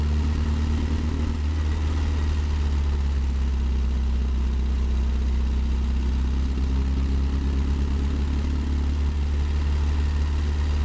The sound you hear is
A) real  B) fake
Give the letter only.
A